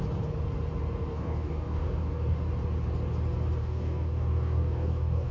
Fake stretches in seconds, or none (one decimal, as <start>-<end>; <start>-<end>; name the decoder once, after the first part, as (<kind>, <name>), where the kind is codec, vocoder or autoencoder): 1.1-2.4 (codec, DAC); 3.6-5.3